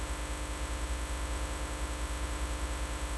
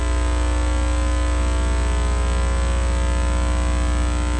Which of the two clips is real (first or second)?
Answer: second